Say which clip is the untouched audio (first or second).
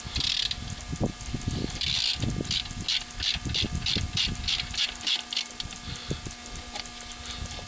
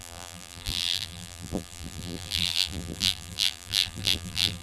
first